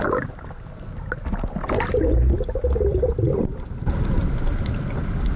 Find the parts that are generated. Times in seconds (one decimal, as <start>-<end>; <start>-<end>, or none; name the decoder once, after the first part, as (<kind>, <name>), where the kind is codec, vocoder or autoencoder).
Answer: 2.9-3.8 (vocoder, BigVGAN v2)